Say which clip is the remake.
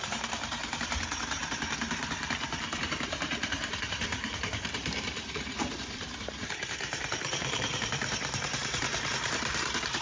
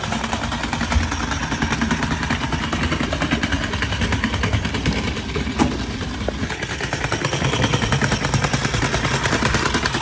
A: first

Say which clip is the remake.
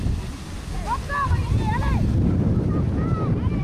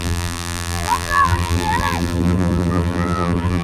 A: second